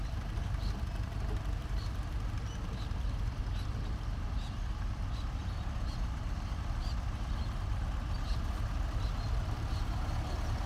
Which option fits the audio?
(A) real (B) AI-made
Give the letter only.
A